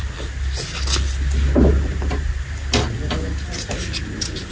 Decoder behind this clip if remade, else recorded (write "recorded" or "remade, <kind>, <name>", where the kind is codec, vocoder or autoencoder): recorded